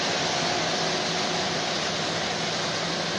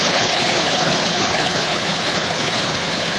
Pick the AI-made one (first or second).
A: second